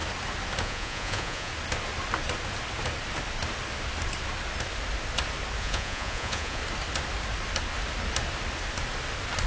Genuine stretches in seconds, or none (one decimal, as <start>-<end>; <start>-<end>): 0.0-0.6; 1.5-5.6; 6.6-9.5